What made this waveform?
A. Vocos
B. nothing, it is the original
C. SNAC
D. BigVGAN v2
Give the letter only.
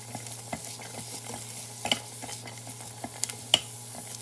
B